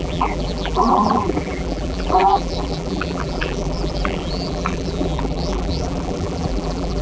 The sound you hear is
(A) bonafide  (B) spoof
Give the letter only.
B